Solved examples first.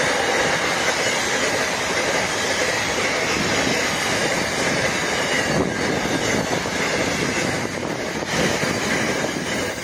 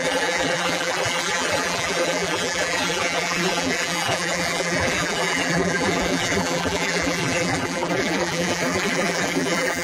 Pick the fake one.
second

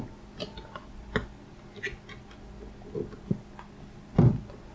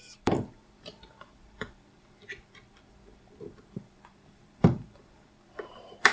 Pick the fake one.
second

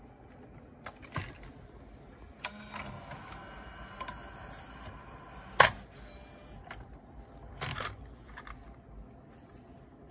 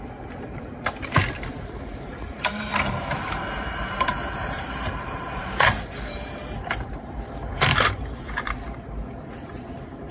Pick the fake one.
second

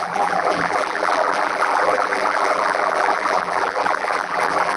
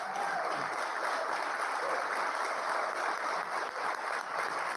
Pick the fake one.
first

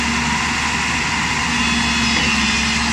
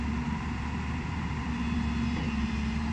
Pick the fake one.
second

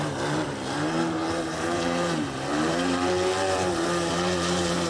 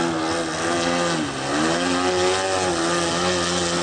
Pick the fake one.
first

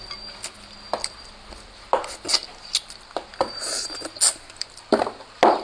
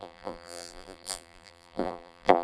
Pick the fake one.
second